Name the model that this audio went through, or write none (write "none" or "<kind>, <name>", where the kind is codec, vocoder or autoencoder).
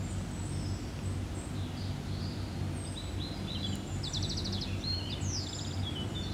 none